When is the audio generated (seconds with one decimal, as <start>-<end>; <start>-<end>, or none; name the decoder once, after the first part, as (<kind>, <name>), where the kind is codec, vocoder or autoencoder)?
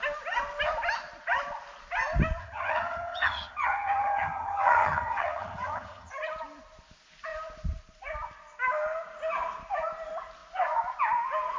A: 2.4-6.1 (vocoder, HiFi-GAN)